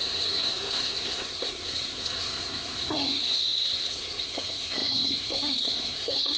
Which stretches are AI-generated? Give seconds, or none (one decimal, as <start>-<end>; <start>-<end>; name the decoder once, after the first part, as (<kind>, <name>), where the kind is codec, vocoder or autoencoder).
0.0-6.4 (codec, SNAC)